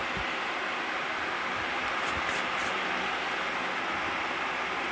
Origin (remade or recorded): recorded